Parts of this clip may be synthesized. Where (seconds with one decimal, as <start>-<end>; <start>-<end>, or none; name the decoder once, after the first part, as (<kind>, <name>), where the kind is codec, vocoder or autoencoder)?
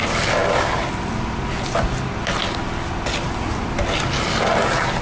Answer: none